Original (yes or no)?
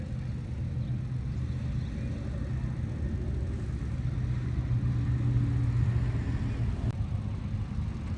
yes